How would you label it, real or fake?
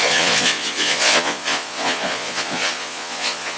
fake